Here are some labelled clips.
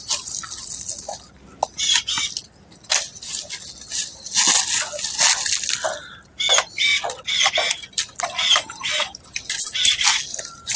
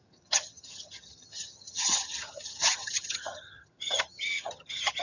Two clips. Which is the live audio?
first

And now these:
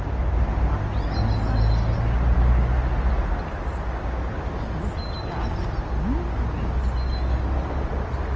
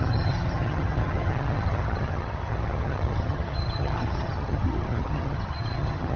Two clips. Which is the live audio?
first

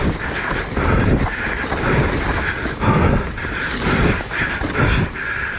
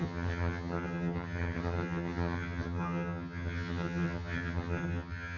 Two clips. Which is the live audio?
first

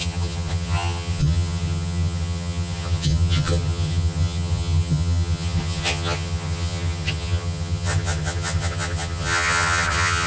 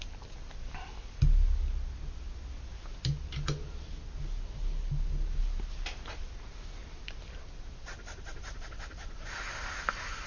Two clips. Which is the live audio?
second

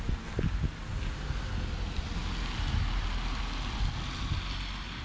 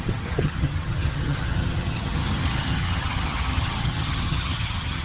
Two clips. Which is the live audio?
first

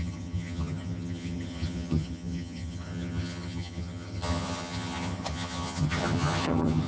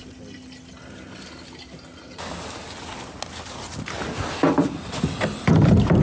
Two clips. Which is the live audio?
second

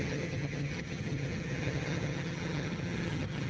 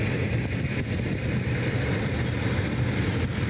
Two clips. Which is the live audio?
second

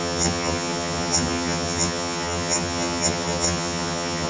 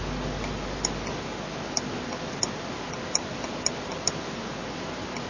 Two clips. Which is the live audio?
second